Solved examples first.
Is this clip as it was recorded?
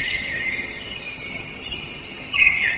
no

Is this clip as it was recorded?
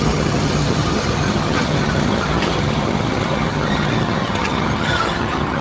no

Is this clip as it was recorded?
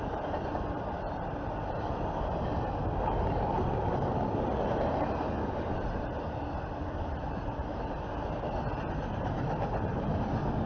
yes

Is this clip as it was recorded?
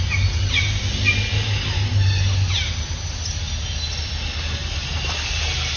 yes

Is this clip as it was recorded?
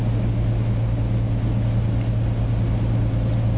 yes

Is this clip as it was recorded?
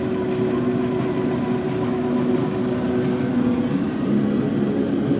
yes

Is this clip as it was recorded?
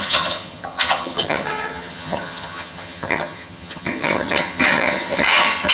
no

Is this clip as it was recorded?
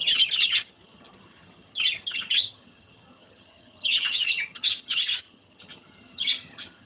no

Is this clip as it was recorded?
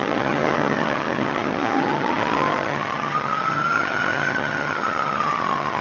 no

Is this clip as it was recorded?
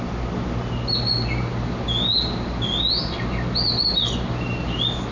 yes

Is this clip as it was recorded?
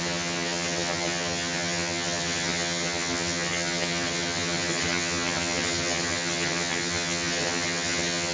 no